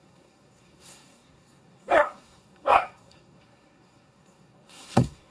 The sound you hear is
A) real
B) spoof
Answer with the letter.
B